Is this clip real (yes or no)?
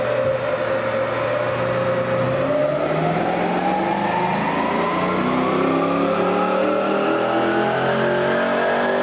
yes